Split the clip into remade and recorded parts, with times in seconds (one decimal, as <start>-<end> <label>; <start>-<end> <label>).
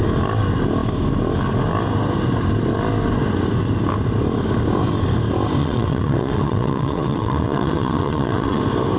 0.0-5.6 recorded; 5.6-8.6 remade; 8.6-9.0 recorded